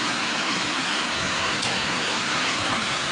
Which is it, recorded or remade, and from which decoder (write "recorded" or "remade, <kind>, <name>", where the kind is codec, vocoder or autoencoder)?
remade, codec, SNAC